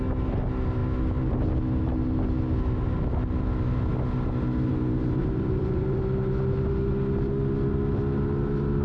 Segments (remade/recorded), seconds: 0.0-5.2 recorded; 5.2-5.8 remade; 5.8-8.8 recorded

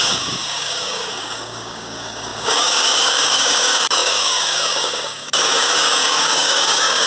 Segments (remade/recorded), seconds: 0.0-7.1 remade

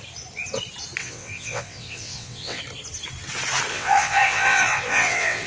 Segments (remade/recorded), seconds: 0.0-1.0 recorded; 1.0-2.6 remade; 2.6-3.7 recorded; 3.7-5.5 remade

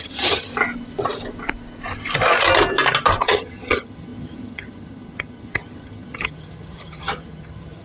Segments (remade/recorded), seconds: 0.0-0.5 remade; 0.5-3.2 recorded; 3.2-7.8 remade

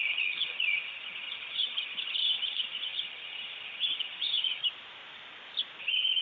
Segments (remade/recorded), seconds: 0.0-4.6 remade; 4.6-5.8 recorded; 5.8-6.2 remade